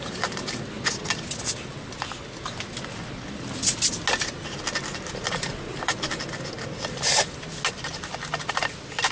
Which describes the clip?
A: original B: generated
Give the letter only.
A